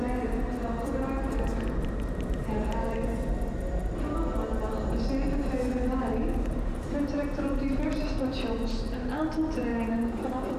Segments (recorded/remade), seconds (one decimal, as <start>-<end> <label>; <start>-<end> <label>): 0.0-10.6 recorded